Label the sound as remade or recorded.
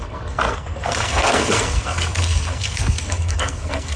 remade